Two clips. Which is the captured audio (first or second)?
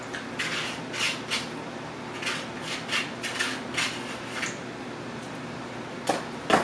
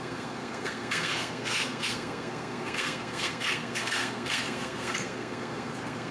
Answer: first